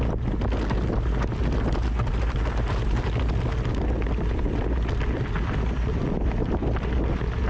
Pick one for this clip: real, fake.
real